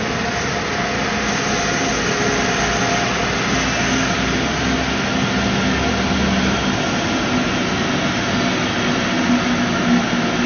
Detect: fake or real real